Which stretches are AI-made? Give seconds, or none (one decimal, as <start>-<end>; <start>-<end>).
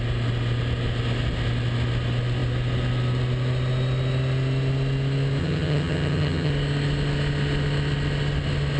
5.4-6.5